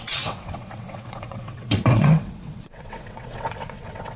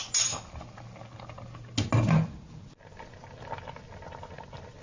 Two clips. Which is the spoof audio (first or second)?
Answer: first